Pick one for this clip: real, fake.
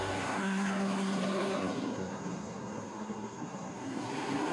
fake